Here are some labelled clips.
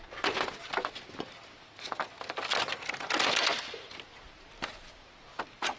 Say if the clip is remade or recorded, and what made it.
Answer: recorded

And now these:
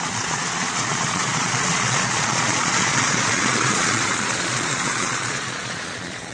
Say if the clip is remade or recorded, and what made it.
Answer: remade, vocoder, Vocos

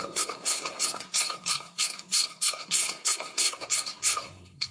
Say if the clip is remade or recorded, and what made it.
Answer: remade, codec, SNAC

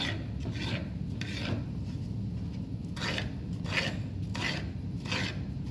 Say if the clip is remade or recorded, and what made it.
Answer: recorded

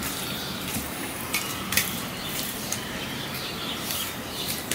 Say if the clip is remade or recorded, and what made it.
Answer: remade, vocoder, BigVGAN v2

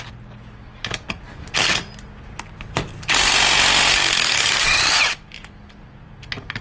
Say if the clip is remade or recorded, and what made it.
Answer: recorded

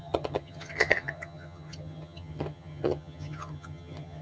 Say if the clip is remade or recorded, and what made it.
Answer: remade, vocoder, HiFi-GAN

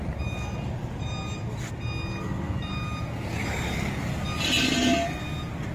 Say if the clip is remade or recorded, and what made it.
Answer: recorded